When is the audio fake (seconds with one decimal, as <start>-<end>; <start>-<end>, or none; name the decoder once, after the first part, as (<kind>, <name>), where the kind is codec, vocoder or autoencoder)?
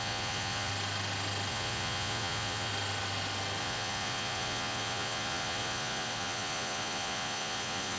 0.0-0.7 (vocoder, Vocos); 1.5-2.7; 3.6-8.0